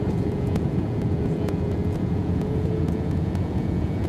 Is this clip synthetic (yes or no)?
yes